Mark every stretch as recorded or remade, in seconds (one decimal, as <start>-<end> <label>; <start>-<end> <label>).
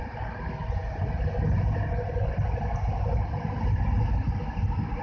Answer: 0.0-5.0 recorded